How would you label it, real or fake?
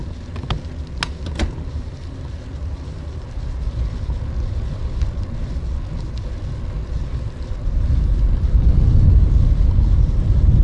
real